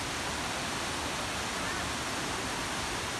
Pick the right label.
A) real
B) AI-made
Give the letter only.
A